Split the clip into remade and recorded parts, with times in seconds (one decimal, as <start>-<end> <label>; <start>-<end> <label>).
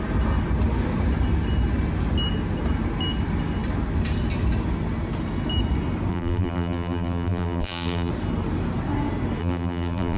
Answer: 0.0-6.1 recorded; 6.1-8.1 remade; 8.1-9.4 recorded; 9.4-10.2 remade